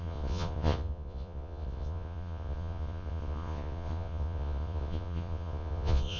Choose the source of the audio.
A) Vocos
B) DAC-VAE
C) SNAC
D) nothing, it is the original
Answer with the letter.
A